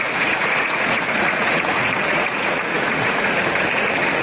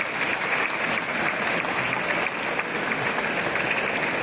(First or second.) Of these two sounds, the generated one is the first